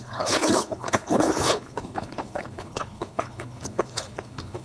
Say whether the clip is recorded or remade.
remade